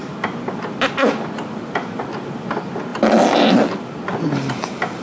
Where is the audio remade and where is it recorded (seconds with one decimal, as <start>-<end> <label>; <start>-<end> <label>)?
0.0-5.0 recorded